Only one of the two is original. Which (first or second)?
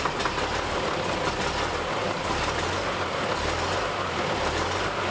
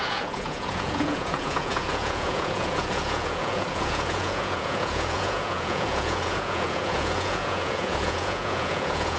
first